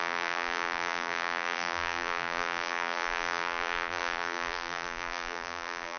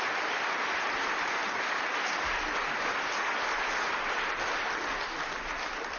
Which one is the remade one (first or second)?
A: first